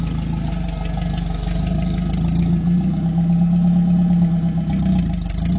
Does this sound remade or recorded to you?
recorded